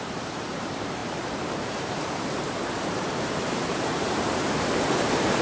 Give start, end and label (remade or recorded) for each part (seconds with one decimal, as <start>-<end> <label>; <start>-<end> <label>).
0.0-5.4 remade